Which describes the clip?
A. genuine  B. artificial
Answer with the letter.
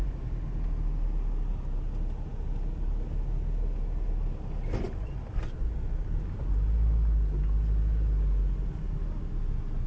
A